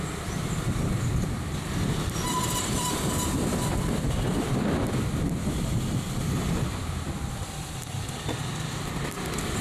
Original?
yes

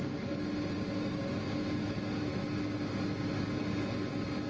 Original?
yes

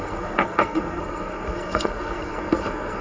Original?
no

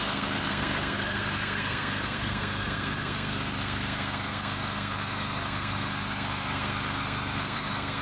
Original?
no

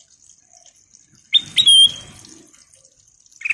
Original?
yes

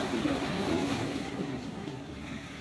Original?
no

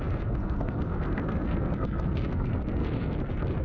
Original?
no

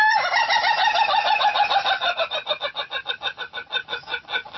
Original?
yes